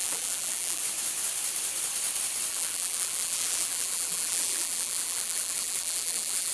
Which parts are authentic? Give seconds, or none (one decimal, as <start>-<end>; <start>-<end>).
0.8-2.5

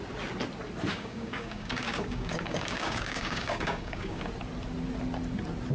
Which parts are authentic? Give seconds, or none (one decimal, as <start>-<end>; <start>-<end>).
0.0-0.9; 4.3-5.7

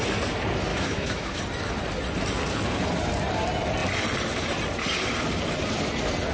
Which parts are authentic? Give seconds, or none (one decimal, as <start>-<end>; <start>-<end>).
0.0-0.7; 1.4-6.3

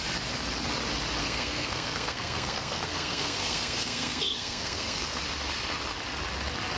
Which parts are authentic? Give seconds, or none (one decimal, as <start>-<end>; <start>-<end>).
0.0-1.2; 5.2-6.8

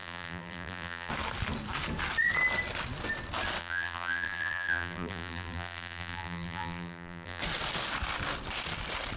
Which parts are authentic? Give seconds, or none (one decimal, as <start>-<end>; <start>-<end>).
1.1-3.6; 7.4-9.2

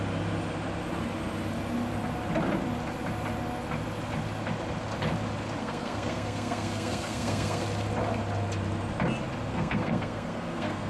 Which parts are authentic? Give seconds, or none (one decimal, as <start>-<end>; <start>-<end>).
0.0-5.6; 7.6-9.5

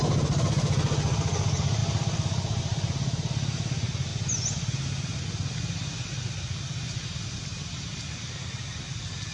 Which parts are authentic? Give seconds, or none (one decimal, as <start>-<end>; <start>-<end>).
0.0-9.3